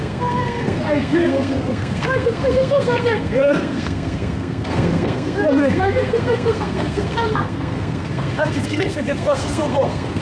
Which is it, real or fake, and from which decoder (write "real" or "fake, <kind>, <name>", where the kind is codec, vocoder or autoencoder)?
fake, codec, SNAC